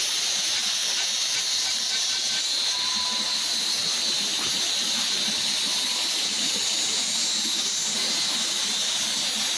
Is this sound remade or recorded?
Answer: recorded